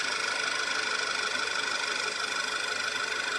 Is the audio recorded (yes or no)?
yes